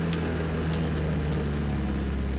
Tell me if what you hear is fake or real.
real